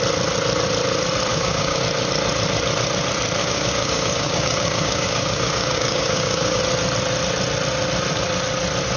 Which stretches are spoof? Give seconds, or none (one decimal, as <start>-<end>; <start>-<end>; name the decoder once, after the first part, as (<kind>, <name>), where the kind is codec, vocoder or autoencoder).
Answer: 1.3-1.8 (codec, DAC); 3.4-6.6